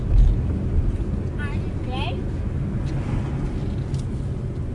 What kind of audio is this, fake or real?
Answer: real